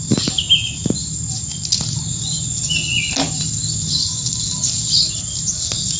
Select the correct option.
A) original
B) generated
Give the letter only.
A